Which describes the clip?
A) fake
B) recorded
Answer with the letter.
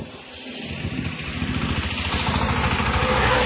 B